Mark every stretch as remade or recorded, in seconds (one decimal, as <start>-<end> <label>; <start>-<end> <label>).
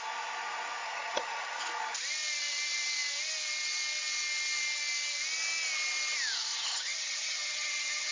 0.0-0.8 recorded; 0.8-1.6 remade; 1.6-6.5 recorded; 6.5-8.1 remade